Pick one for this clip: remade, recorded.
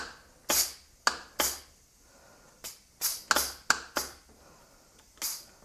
recorded